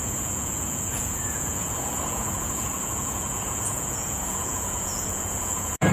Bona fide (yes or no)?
no